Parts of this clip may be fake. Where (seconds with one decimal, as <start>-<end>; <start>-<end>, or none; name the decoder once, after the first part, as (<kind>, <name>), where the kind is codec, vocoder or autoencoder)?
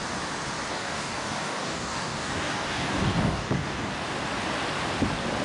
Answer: 0.7-3.9 (codec, DAC)